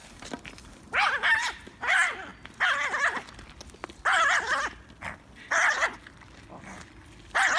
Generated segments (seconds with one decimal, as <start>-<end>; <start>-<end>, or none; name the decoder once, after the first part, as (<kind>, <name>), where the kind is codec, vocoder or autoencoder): none